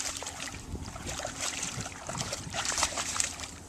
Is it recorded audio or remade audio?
remade